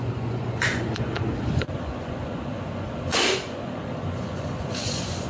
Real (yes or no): no